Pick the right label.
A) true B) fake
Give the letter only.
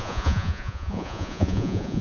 B